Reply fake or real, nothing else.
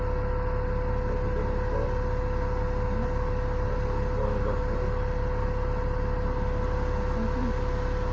real